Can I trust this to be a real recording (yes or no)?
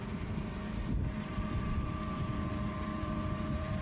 no